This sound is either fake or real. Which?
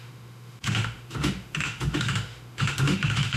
fake